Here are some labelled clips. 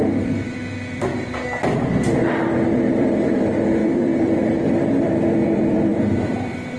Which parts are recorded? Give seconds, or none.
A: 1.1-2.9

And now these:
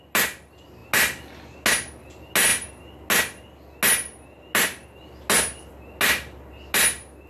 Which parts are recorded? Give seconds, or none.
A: 0.0-7.3

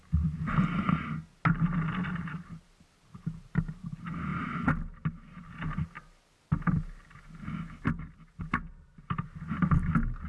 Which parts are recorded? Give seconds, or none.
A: 0.0-10.3

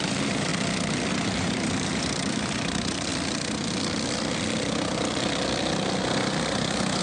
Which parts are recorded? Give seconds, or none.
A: 0.5-1.1; 3.1-7.0

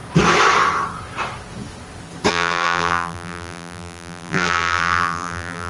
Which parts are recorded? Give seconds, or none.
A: 0.0-2.3

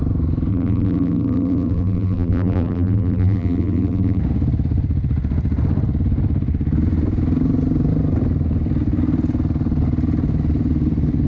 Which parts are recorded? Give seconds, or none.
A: 0.0-0.5; 4.2-11.3

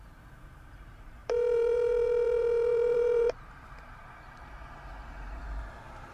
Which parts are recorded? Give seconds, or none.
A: none

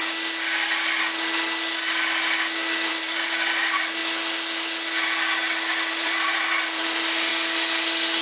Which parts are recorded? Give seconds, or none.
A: 0.0-2.9; 4.0-5.9; 7.3-8.2